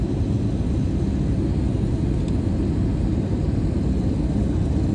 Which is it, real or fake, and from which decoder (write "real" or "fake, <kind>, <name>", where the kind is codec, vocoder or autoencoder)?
real